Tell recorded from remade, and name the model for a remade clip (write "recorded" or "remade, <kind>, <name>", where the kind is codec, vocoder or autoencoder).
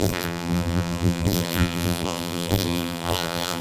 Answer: remade, vocoder, BigVGAN v2